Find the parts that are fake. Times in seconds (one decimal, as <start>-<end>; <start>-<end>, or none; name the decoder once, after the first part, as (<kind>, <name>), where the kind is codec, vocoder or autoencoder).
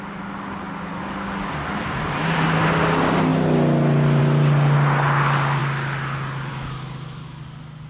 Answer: none